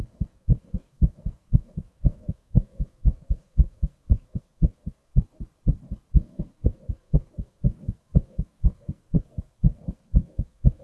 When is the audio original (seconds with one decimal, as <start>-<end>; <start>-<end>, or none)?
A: 5.1-6.1